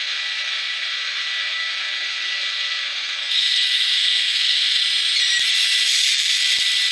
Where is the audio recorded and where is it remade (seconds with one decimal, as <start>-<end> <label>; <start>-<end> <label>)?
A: 0.0-4.8 remade; 4.8-6.9 recorded